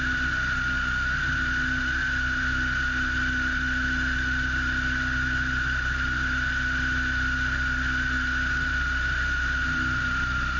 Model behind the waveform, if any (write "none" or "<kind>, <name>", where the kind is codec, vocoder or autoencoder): none